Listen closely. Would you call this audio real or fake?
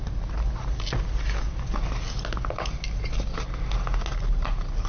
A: real